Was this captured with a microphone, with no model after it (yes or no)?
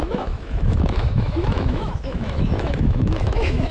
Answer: no